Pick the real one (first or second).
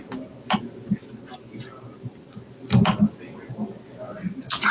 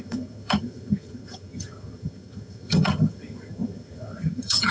first